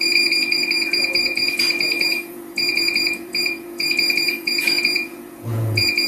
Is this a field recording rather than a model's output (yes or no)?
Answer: no